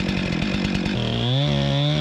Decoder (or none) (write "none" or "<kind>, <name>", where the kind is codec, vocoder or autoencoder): none